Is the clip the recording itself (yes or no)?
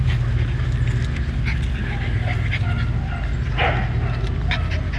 yes